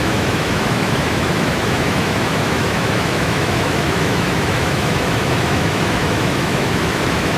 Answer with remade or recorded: remade